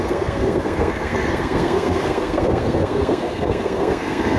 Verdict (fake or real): fake